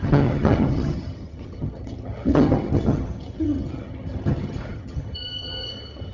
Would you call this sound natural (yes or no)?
no